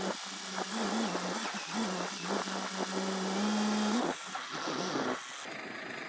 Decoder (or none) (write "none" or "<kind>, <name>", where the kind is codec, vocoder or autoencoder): none